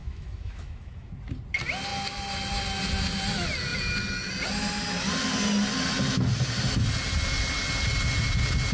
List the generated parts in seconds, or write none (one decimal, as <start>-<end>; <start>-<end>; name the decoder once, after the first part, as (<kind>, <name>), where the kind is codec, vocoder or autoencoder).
0.0-1.1 (autoencoder, DAC-VAE)